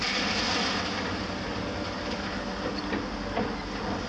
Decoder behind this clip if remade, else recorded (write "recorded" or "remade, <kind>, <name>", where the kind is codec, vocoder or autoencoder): recorded